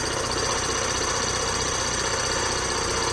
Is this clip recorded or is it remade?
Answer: recorded